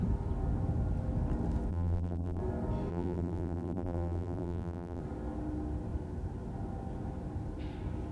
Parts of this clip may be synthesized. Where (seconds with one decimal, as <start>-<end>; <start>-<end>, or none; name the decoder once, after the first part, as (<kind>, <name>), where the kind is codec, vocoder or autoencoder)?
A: 1.7-2.4 (vocoder, BigVGAN v2); 2.9-5.0